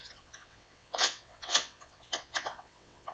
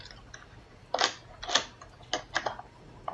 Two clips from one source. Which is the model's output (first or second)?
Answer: first